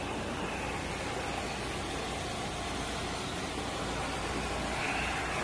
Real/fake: real